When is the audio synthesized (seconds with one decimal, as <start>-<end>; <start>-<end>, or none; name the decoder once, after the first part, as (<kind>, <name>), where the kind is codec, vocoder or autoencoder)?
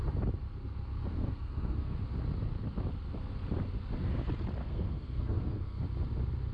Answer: 1.1-2.0 (codec, SNAC); 4.6-5.8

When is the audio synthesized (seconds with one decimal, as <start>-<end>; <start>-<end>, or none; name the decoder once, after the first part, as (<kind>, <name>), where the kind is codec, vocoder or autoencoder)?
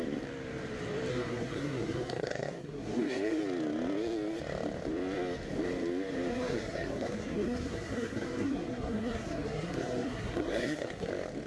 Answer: 1.1-3.4 (codec, SNAC); 6.3-11.1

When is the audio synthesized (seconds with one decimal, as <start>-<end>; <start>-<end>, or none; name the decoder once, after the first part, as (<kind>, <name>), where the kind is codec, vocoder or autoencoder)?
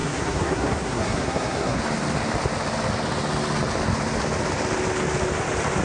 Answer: 0.0-1.8 (codec, SNAC)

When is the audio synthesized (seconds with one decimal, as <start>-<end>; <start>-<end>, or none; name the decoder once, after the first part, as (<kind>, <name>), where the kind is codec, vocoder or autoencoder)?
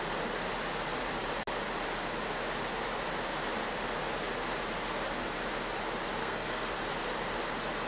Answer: 6.2-6.7 (codec, SNAC)